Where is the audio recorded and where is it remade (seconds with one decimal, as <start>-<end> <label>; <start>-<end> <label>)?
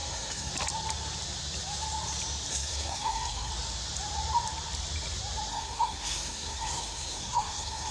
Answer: 0.0-0.5 remade; 0.5-2.5 recorded; 2.5-3.5 remade; 3.5-5.5 recorded; 5.5-7.9 remade